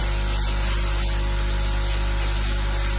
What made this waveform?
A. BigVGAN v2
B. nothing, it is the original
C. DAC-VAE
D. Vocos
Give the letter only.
B